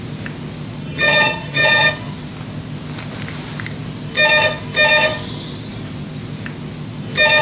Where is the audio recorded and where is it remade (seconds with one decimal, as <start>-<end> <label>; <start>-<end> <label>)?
0.0-0.8 recorded; 0.8-1.9 remade; 1.9-7.4 recorded